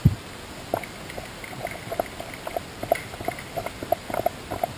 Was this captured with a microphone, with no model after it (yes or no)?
yes